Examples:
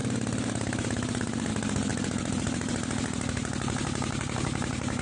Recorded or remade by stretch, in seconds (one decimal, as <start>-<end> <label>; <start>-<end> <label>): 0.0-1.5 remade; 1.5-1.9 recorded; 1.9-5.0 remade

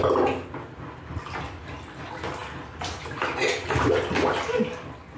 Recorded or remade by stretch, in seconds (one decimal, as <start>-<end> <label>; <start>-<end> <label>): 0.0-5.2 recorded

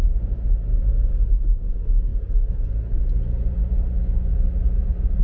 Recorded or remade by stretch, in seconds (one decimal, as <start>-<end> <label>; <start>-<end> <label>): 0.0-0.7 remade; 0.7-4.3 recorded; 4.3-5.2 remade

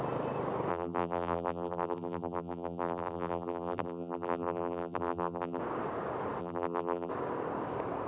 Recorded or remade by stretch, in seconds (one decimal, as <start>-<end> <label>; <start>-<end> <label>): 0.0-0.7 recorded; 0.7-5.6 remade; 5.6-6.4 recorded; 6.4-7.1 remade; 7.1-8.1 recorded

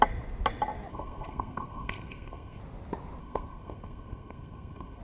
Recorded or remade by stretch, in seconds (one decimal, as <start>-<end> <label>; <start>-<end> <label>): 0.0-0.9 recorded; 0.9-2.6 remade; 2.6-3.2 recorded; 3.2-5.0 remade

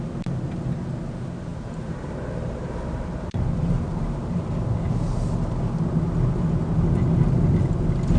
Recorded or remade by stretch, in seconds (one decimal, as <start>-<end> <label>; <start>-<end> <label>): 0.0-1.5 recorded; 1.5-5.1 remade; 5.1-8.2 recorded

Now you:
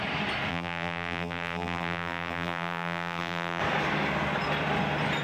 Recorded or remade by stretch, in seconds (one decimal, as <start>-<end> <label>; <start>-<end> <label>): 0.0-0.5 recorded; 0.5-3.6 remade; 3.6-5.2 recorded

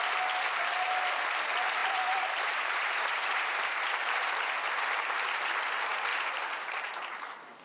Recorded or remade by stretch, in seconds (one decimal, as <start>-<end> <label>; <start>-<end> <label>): 0.0-1.8 recorded; 1.8-4.5 remade; 4.5-6.1 recorded; 6.1-7.1 remade; 7.1-7.6 recorded